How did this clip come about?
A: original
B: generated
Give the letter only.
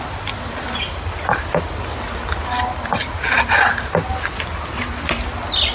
A